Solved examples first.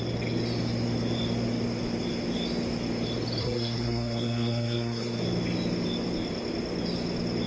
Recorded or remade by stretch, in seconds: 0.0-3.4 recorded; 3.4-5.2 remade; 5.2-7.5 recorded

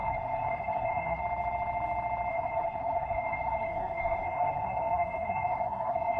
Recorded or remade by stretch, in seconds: 0.0-1.2 remade; 1.2-2.3 recorded; 2.3-6.2 remade

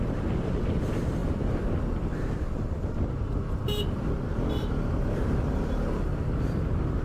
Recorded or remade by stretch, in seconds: 0.0-7.0 recorded